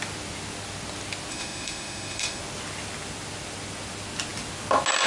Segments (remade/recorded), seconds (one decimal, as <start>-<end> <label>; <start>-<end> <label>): 0.0-1.3 recorded; 1.3-2.4 remade; 2.4-5.1 recorded